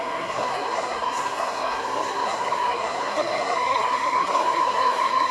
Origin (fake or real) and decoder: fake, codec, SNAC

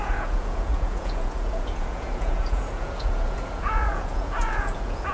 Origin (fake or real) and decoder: fake, vocoder, Vocos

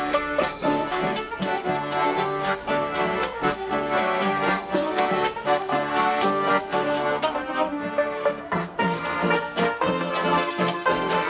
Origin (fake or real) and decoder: fake, codec, SNAC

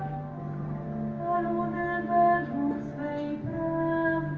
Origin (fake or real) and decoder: real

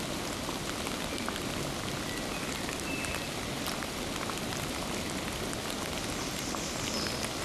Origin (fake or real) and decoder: real